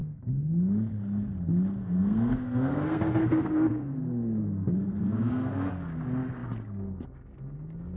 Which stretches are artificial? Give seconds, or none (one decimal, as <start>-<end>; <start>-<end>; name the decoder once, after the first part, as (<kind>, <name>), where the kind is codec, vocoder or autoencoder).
0.0-0.5 (codec, SNAC); 1.8-5.7